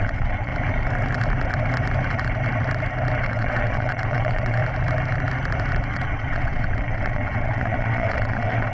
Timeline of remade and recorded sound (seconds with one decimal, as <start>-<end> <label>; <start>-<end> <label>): 0.0-0.5 remade; 0.5-3.2 recorded; 3.2-4.6 remade; 4.6-5.9 recorded; 5.9-8.7 remade